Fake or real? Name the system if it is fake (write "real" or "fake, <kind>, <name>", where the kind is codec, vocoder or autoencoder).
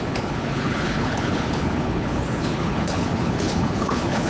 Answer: fake, codec, HILCodec